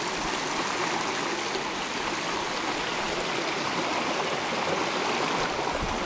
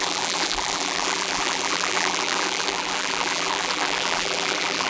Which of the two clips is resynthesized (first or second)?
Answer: second